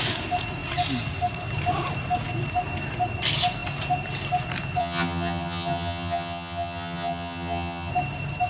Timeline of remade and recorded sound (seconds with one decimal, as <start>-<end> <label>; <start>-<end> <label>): 0.0-4.8 recorded; 4.8-7.9 remade; 7.9-8.5 recorded